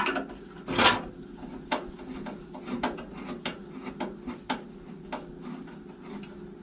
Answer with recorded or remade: recorded